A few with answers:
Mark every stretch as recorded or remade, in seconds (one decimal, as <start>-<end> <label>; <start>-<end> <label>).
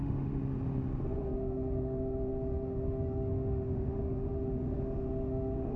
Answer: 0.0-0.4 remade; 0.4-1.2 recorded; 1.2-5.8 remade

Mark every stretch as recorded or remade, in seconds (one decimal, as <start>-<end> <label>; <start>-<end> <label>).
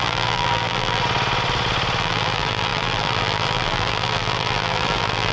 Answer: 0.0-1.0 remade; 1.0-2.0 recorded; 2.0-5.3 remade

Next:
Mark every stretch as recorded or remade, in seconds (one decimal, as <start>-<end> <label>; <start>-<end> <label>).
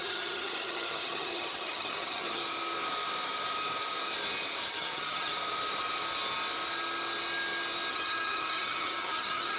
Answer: 0.0-2.4 remade; 2.4-4.7 recorded; 4.7-5.3 remade; 5.3-7.9 recorded; 7.9-9.6 remade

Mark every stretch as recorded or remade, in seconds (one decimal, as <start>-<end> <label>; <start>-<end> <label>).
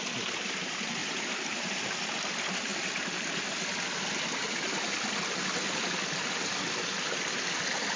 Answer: 0.0-8.0 recorded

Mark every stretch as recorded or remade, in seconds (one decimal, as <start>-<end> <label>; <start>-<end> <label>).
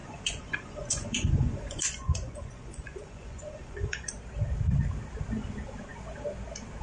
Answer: 0.0-4.1 remade; 4.1-6.8 recorded